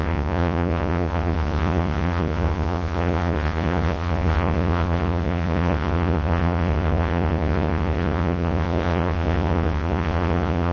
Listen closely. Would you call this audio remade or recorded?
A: remade